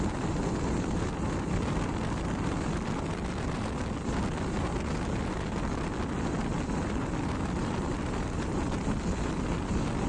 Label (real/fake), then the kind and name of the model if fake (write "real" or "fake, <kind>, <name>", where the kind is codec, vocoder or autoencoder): real